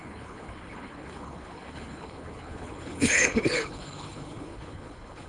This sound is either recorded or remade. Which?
remade